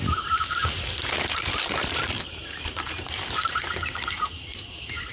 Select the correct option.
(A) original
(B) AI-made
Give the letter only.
B